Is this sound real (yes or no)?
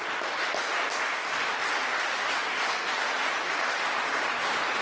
yes